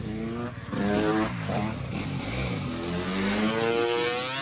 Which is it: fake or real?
real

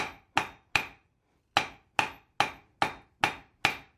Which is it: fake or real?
real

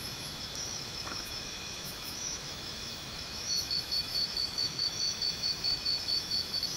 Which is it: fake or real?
fake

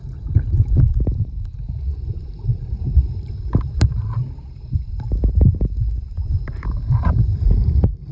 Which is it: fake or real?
fake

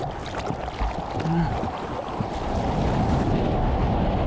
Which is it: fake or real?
real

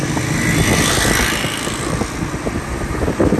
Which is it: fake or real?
real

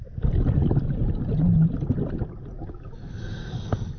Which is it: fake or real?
real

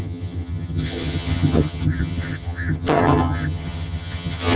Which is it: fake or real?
fake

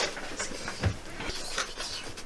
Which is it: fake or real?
real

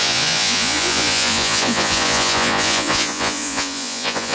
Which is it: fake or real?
fake